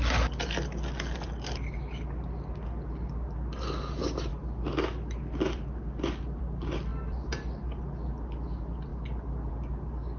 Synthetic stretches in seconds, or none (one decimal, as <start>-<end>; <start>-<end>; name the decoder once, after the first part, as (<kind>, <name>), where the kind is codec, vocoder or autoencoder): none